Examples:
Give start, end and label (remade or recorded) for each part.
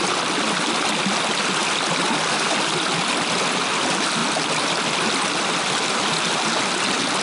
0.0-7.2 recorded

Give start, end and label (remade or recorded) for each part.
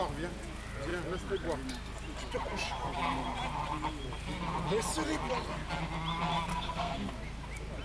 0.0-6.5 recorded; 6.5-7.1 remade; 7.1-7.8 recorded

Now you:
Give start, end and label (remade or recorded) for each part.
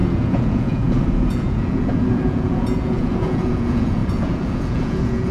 0.0-5.3 remade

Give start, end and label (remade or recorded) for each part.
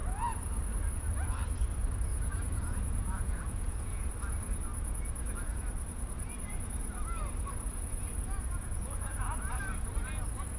0.0-2.1 recorded; 2.1-4.1 remade; 4.1-10.6 recorded